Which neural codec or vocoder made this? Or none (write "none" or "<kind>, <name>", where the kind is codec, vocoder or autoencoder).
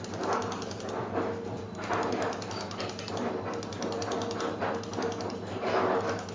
none